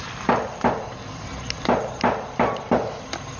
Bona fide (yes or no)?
yes